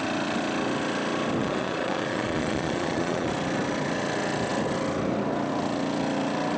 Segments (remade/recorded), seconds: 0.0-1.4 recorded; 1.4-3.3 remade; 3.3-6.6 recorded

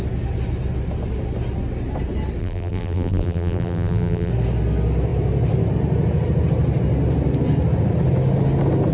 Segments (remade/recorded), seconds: 0.0-2.4 recorded; 2.4-4.3 remade; 4.3-8.9 recorded

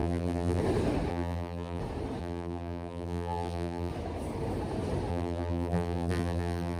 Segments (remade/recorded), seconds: 0.0-0.6 remade; 0.6-1.1 recorded; 1.1-1.8 remade; 1.8-2.2 recorded; 2.2-3.9 remade; 3.9-5.1 recorded; 5.1-6.8 remade

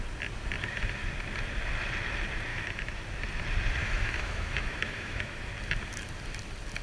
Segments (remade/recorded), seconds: 0.0-2.5 recorded; 2.5-3.0 remade; 3.0-3.8 recorded; 3.8-5.5 remade; 5.5-6.8 recorded

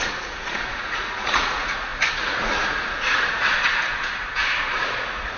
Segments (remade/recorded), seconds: 0.0-5.4 remade